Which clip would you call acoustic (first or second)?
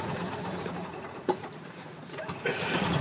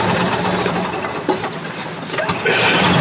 second